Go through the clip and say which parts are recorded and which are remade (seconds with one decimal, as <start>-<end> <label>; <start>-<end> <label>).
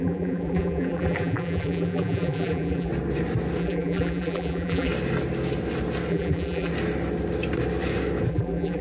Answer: 0.0-2.9 remade; 2.9-3.6 recorded; 3.6-4.9 remade; 4.9-6.1 recorded; 6.1-6.7 remade; 6.7-8.3 recorded; 8.3-8.8 remade